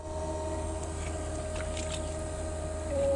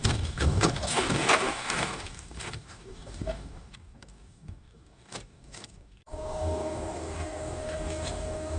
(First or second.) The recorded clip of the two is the first